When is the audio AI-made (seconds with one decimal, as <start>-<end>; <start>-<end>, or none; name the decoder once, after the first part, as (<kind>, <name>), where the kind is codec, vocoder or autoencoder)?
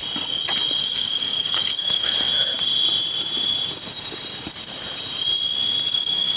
0.8-2.3 (codec, DAC); 5.9-6.4